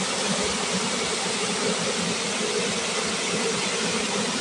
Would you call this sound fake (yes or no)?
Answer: no